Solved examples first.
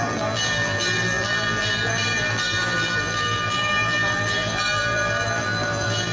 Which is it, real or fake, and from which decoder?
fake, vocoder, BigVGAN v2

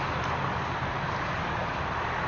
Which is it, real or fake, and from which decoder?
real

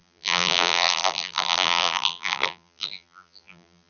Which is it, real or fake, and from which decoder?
fake, vocoder, BigVGAN v2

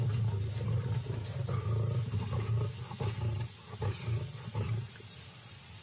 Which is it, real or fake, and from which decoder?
real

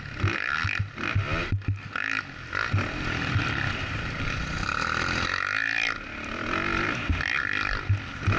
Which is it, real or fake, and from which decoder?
real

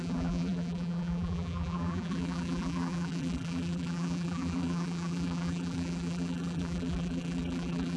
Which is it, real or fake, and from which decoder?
fake, vocoder, BigVGAN v2